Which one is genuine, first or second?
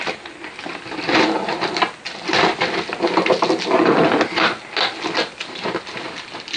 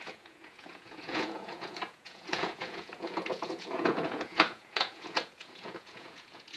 first